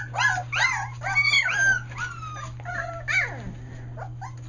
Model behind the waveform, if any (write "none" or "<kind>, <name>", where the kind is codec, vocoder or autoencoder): none